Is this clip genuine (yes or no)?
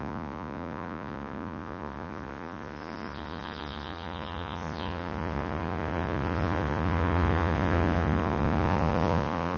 no